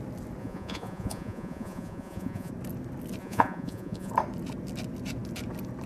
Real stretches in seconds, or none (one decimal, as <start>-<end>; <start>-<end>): 0.0-0.4; 2.5-3.2; 4.1-5.9